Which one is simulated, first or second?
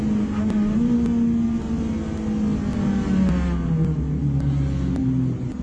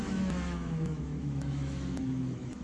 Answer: second